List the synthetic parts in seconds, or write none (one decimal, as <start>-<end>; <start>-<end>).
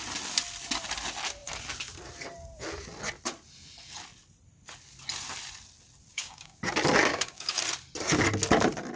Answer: 6.1-6.6; 7.1-7.6